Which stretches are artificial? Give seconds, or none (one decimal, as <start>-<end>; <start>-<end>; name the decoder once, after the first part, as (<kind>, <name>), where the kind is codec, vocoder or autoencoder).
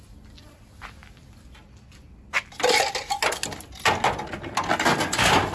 none